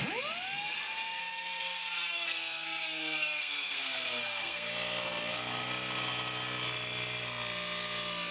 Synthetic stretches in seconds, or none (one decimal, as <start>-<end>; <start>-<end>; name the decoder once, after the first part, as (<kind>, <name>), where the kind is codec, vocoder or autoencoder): 1.2-4.7 (codec, SNAC)